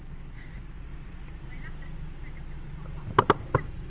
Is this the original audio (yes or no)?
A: yes